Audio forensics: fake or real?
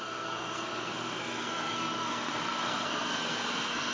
fake